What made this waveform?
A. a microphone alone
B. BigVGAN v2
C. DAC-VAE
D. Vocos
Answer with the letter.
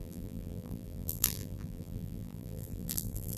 B